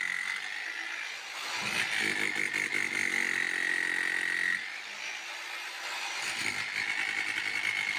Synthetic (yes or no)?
no